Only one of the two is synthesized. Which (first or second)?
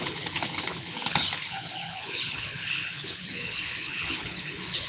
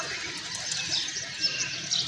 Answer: first